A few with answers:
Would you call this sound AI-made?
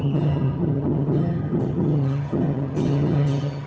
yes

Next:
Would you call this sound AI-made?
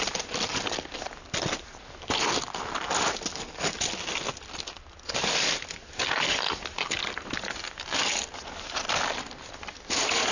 no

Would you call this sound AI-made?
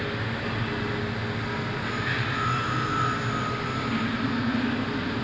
no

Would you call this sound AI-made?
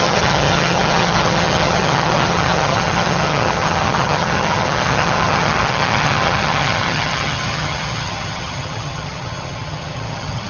yes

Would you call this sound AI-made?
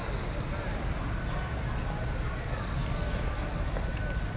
no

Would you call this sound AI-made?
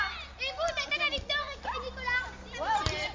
no